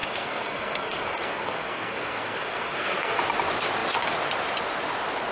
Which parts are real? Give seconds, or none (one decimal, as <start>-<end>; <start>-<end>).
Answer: 3.2-5.3